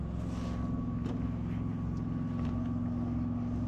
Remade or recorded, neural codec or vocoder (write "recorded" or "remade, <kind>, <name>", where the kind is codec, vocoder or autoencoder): recorded